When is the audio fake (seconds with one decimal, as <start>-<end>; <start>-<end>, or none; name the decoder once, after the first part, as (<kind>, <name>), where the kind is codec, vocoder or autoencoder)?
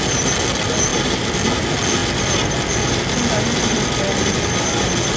none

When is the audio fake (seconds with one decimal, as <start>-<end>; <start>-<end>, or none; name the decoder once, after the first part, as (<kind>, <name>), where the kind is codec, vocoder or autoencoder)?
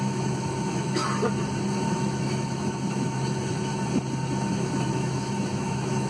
0.0-1.0 (autoencoder, DAC-VAE); 1.9-3.7; 4.5-6.1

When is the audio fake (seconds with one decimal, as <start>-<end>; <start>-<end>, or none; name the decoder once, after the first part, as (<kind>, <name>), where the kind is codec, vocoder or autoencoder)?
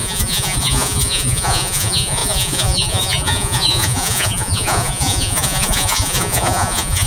0.0-7.1 (vocoder, Vocos)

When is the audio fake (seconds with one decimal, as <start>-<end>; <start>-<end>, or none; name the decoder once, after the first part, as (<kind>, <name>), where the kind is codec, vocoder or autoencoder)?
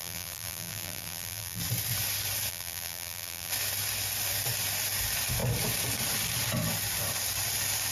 0.0-1.6 (vocoder, BigVGAN v2); 2.5-3.5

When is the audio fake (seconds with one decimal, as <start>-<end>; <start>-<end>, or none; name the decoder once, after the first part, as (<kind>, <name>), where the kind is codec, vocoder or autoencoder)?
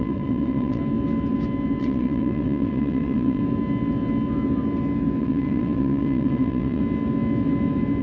0.0-0.8 (vocoder, WaveNeXt); 1.8-3.4; 5.2-6.8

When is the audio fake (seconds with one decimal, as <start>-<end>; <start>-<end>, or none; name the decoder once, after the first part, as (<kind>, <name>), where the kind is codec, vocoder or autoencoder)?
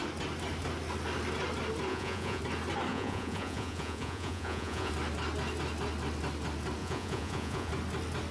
1.9-2.4 (vocoder, Vocos); 2.9-4.9; 6.8-7.7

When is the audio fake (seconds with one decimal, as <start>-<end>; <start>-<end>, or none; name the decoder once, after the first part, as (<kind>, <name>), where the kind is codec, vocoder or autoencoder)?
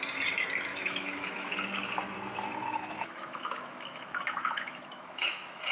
0.7-1.5 (autoencoder, DAC-VAE); 2.7-5.7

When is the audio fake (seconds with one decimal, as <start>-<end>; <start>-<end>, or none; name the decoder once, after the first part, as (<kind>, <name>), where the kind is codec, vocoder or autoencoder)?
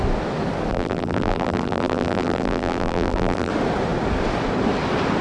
0.7-3.5 (vocoder, BigVGAN v2)